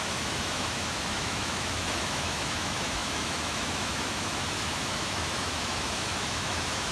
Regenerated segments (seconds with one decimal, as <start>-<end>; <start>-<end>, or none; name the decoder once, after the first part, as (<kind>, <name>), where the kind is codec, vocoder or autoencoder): 0.0-6.9 (autoencoder, DAC-VAE)